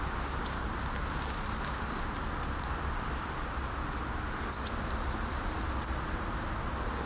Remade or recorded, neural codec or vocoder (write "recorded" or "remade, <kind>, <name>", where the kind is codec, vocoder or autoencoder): recorded